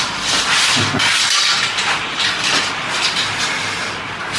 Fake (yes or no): no